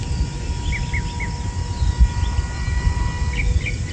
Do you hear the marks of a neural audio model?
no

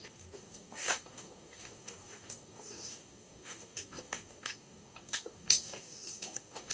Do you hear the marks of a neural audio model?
yes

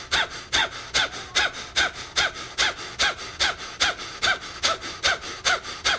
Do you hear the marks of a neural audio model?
no